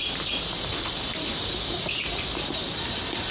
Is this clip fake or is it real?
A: real